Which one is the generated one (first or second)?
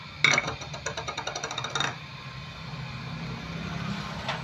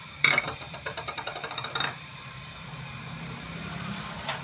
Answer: second